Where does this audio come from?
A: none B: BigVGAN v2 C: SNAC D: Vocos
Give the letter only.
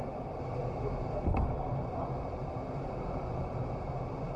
A